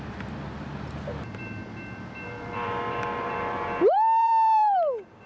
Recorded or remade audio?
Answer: remade